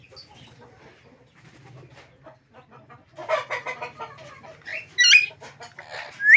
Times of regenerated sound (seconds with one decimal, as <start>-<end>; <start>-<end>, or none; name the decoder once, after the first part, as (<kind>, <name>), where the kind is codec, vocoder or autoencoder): 3.2-4.3 (vocoder, BigVGAN v2); 4.7-5.3